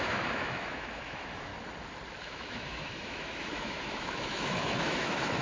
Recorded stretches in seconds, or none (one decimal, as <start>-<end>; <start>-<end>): 1.5-2.2